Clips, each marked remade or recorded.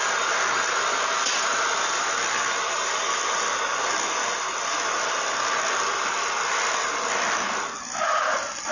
recorded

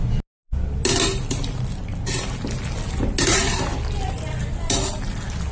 recorded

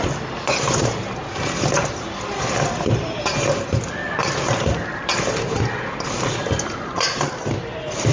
recorded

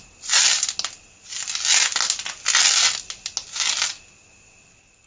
recorded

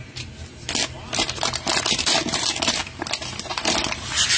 recorded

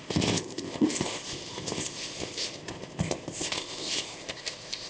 remade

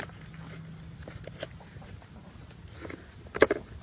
recorded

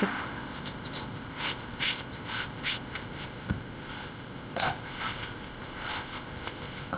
remade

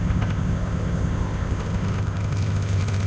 remade